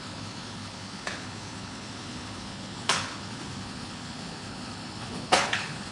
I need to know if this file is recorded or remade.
remade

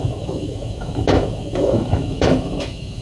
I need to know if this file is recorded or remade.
remade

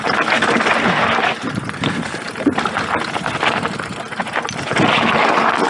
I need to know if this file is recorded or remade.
recorded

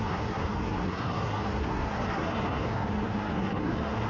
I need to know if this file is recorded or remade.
remade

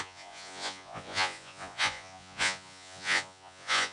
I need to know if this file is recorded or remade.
remade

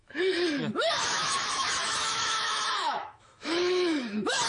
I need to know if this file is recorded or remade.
remade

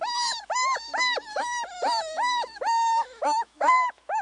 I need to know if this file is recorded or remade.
remade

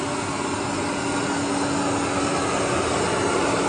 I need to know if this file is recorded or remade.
recorded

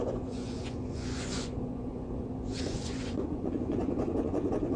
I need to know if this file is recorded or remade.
remade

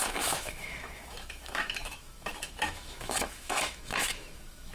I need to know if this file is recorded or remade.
remade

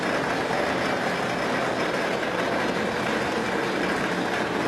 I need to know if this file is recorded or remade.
recorded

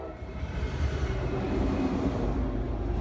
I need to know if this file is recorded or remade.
remade